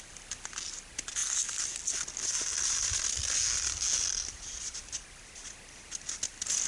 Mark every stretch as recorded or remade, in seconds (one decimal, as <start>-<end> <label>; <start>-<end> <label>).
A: 0.0-6.7 recorded